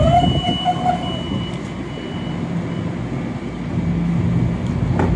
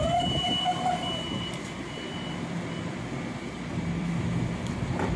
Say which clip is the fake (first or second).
second